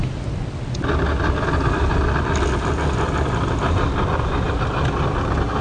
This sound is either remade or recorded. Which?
recorded